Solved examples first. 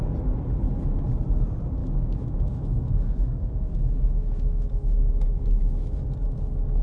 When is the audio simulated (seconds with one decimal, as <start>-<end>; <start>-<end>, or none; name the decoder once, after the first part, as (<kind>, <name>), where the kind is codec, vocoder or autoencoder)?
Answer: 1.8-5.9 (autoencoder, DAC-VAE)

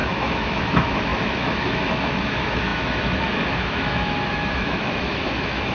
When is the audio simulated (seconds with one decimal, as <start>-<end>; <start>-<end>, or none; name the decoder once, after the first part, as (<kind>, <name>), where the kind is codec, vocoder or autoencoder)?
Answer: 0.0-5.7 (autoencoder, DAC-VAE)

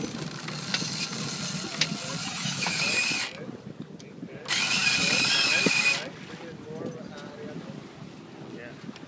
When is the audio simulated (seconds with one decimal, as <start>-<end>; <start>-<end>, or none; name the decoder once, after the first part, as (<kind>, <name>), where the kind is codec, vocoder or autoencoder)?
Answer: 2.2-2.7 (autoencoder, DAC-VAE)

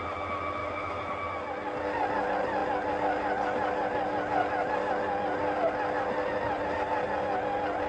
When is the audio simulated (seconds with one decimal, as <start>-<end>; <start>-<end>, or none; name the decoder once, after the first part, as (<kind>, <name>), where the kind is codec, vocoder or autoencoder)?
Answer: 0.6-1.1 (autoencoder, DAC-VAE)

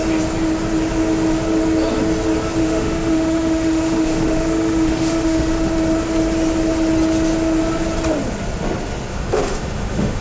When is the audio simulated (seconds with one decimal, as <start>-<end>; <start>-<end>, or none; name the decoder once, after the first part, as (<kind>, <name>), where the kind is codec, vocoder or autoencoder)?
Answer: 2.6-5.7 (autoencoder, DAC-VAE); 9.1-10.2